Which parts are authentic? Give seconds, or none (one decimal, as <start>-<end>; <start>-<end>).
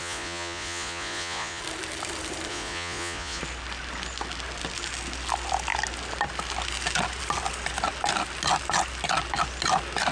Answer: 1.6-2.5; 3.4-10.1